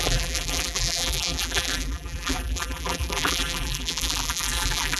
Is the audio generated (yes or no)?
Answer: yes